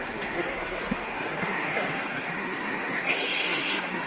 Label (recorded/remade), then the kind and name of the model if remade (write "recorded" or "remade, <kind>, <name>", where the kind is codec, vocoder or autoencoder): remade, codec, SNAC